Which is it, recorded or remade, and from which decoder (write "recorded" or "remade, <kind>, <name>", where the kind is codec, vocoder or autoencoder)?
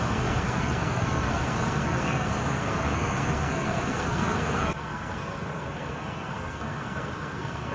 remade, codec, SNAC